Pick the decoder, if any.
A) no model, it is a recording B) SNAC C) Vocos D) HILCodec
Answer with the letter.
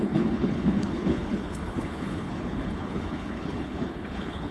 D